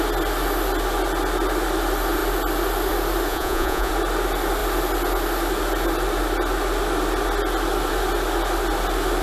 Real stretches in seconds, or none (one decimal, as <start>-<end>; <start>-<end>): 0.0-3.3; 3.9-9.2